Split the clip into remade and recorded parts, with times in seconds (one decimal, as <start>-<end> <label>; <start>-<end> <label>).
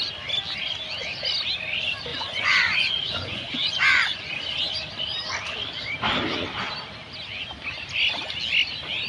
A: 0.0-2.1 recorded; 2.1-4.3 remade; 4.3-9.1 recorded